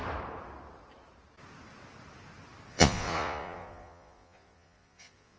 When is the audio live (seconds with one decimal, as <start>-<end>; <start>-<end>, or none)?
0.0-2.7